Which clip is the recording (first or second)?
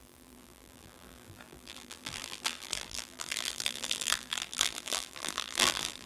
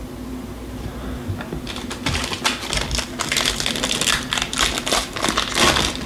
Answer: second